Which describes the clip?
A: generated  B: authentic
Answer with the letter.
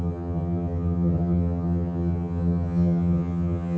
A